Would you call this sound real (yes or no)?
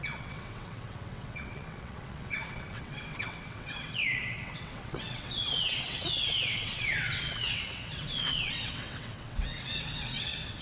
no